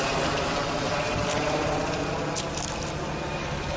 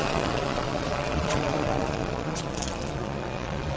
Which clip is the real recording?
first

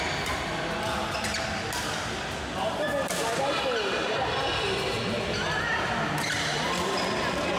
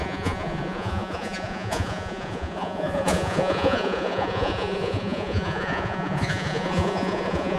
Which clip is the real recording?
first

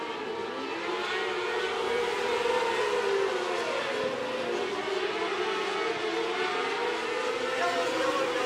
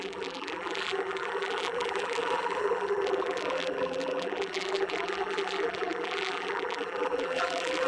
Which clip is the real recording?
first